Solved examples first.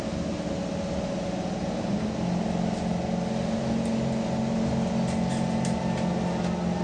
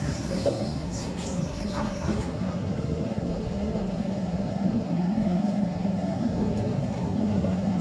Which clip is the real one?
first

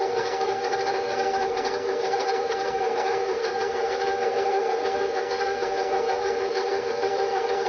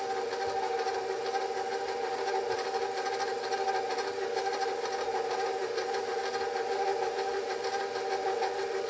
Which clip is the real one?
second